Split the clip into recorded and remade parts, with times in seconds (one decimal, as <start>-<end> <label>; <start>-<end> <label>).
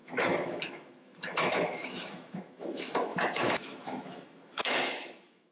0.0-5.5 remade